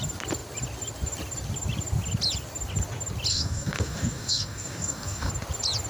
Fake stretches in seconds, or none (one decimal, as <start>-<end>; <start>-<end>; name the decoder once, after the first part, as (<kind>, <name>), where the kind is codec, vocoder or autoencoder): 3.3-5.3 (codec, DAC)